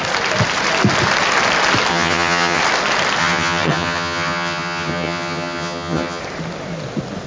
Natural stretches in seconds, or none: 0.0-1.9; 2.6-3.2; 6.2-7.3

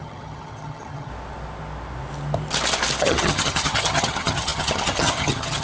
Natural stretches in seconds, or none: 1.1-3.0

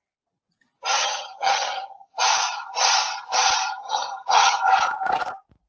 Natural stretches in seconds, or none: 0.0-0.9; 2.2-3.8; 4.6-5.7